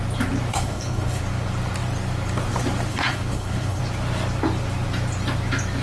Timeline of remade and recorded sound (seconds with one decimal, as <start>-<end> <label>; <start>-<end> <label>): 0.0-0.5 recorded; 0.5-1.2 remade; 1.2-2.9 recorded; 2.9-3.8 remade; 3.8-5.8 recorded